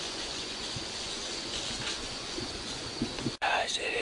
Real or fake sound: fake